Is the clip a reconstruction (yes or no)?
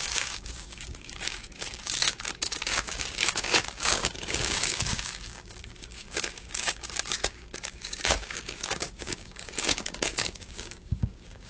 yes